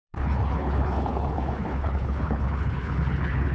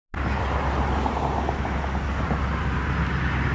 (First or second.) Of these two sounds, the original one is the second